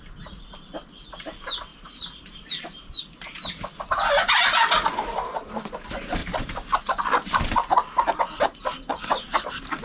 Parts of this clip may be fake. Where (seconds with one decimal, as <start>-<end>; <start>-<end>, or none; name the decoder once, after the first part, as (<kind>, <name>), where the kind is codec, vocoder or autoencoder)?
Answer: 1.7-3.0 (vocoder, BigVGAN v2); 6.2-6.8